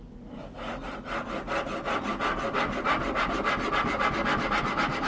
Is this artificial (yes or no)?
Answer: no